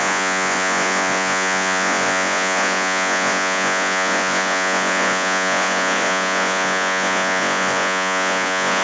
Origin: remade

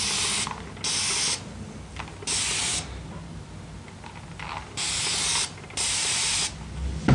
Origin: recorded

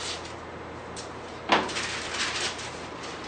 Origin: recorded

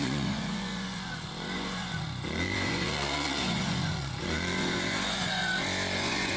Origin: remade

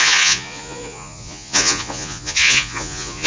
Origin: remade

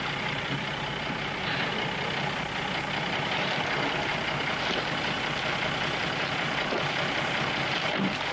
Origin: recorded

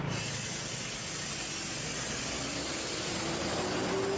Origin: recorded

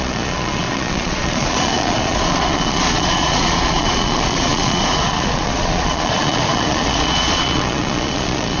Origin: remade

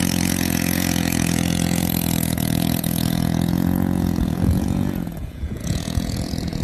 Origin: remade